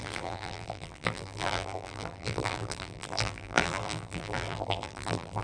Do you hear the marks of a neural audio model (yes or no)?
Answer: yes